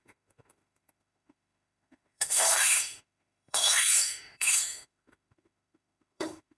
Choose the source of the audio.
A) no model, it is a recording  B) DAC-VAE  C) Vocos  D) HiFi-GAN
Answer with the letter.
B